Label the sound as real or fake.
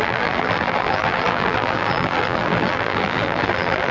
fake